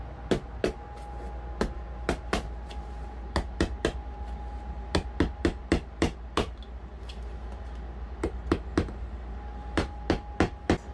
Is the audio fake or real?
real